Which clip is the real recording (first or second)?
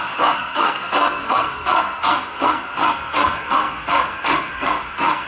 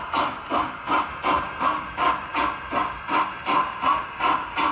second